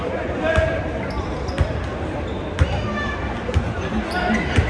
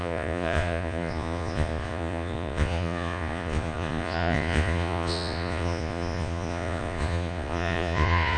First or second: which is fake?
second